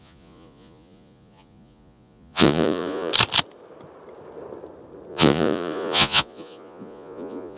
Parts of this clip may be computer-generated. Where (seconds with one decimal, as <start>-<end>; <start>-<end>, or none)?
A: 0.0-3.1; 5.1-7.6